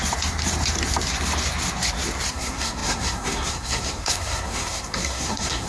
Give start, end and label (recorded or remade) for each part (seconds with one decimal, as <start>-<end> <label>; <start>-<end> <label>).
0.0-2.3 recorded; 2.3-5.7 remade